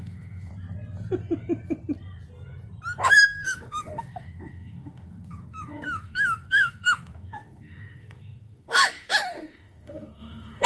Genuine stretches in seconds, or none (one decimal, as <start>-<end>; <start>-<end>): 0.5-3.1